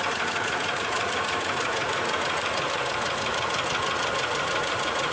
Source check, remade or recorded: remade